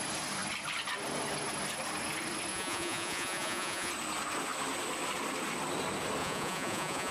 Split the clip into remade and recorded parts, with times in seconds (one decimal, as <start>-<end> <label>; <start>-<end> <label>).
0.0-2.5 recorded; 2.5-3.9 remade; 3.9-6.2 recorded; 6.2-7.1 remade